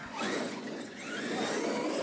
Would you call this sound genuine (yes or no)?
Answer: no